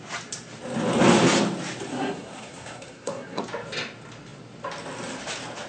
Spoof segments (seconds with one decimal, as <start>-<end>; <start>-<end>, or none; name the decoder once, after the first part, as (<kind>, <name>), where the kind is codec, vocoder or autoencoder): 1.9-3.4 (codec, SNAC)